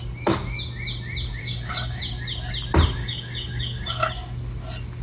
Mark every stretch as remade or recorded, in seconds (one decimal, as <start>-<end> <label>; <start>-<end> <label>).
0.0-1.4 recorded; 1.4-2.0 remade; 2.0-3.0 recorded; 3.0-4.1 remade; 4.1-5.0 recorded